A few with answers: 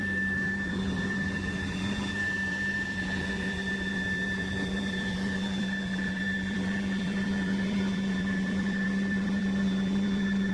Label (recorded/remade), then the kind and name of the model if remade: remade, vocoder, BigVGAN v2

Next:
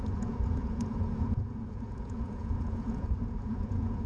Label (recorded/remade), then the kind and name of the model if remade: remade, vocoder, Vocos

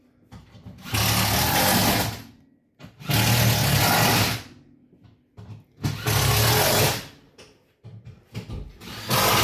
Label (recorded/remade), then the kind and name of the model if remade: recorded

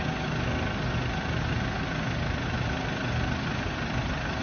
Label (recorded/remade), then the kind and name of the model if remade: recorded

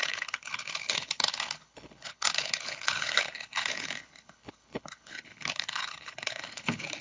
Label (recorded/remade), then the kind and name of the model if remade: remade, codec, HILCodec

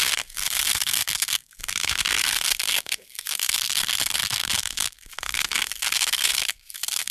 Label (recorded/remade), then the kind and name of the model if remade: remade, codec, SNAC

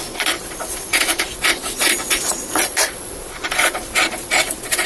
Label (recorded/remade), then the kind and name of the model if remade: remade, vocoder, Vocos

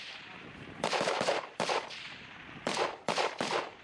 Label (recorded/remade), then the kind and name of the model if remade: remade, vocoder, BigVGAN v2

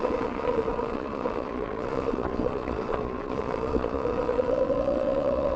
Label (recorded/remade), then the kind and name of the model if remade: remade, vocoder, Vocos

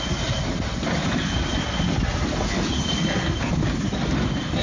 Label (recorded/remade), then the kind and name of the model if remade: recorded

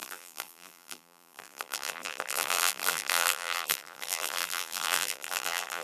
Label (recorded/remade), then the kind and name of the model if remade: remade, vocoder, BigVGAN v2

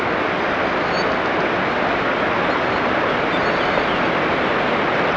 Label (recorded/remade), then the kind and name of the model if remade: recorded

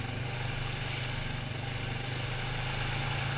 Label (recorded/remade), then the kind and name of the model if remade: recorded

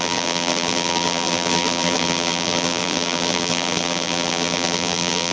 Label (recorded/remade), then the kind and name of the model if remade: remade, vocoder, BigVGAN v2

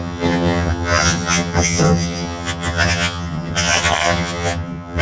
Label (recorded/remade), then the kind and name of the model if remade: remade, vocoder, HiFi-GAN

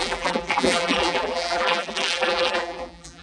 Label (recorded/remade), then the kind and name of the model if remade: remade, vocoder, BigVGAN v2